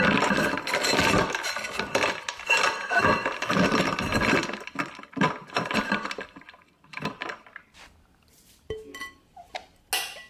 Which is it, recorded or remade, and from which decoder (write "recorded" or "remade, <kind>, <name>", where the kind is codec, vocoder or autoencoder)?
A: recorded